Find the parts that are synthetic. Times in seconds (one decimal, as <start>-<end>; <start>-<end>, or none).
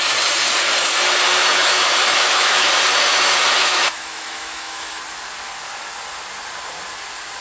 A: 1.4-2.7; 3.6-5.0